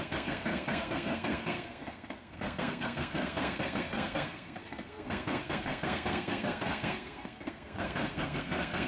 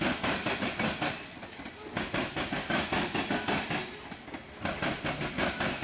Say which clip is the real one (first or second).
second